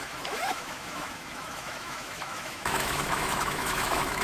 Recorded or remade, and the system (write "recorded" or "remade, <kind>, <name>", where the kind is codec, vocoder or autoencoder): remade, autoencoder, DAC-VAE